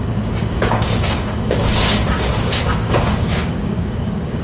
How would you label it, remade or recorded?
remade